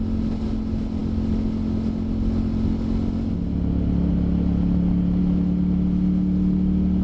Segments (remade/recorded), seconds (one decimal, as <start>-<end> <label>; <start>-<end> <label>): 0.0-7.0 recorded